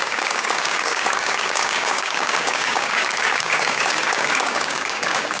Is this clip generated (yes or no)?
yes